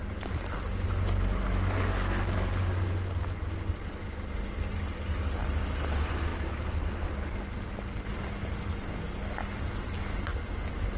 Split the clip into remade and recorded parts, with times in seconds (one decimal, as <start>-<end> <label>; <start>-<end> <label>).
0.0-11.0 recorded